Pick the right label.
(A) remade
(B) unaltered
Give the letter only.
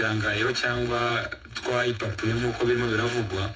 A